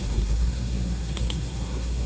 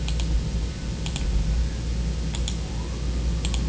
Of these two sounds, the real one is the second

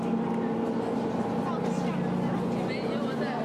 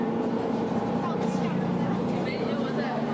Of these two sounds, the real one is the first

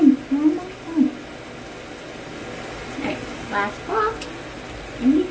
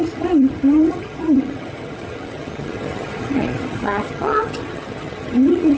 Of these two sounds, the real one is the first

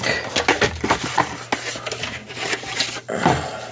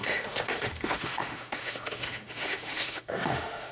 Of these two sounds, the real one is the first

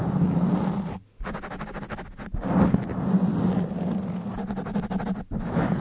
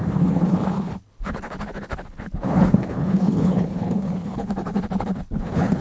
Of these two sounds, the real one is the first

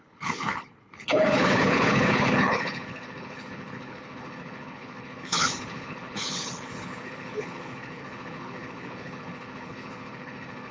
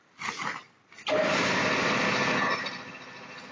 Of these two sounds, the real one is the second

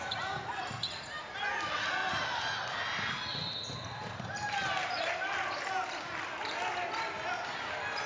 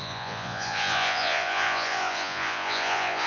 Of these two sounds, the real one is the first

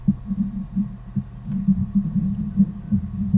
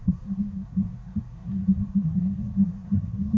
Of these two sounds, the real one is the first